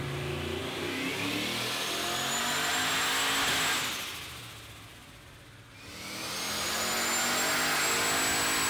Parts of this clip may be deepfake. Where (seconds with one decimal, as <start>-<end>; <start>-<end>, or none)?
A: none